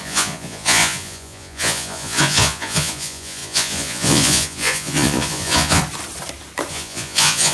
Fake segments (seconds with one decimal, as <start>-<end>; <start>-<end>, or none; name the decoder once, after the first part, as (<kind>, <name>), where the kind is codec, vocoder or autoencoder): 0.0-5.8 (vocoder, Vocos); 6.7-7.5